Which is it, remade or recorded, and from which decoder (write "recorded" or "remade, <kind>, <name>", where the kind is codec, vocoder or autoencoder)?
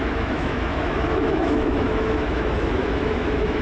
remade, autoencoder, DAC-VAE